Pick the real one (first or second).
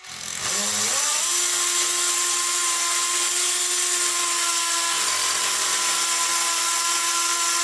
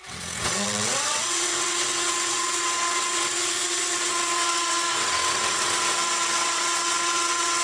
first